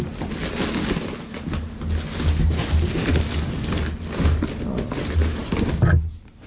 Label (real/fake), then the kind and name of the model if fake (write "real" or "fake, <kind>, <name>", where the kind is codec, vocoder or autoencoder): real